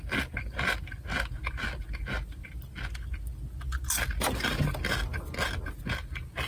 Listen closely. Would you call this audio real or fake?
real